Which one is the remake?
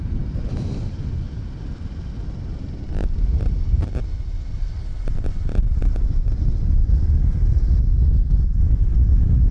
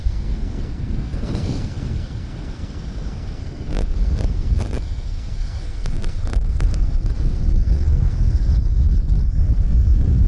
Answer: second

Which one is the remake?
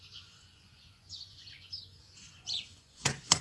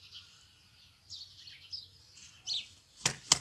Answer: first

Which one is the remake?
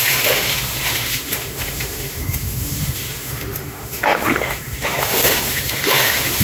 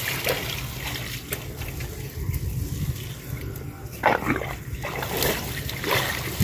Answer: first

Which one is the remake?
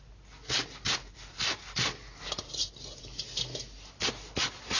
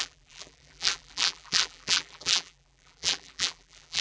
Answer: second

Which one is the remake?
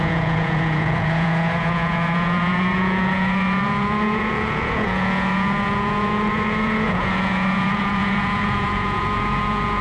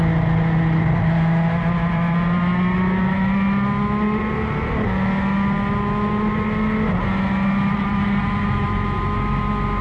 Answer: first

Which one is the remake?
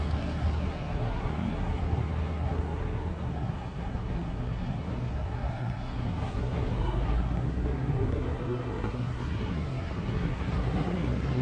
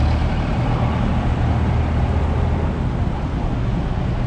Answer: first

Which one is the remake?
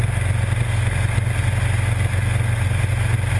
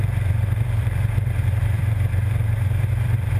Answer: second